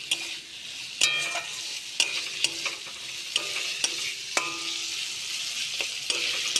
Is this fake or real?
real